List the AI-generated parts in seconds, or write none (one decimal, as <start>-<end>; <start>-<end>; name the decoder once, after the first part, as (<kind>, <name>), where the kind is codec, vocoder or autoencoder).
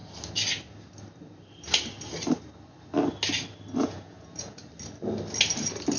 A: 3.8-4.6 (vocoder, Vocos)